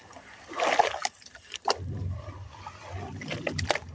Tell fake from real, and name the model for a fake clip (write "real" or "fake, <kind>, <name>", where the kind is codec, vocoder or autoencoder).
real